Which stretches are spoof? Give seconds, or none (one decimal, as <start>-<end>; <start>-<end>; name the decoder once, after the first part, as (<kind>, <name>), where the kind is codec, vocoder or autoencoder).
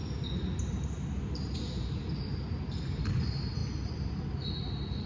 none